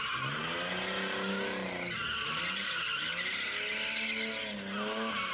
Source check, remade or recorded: recorded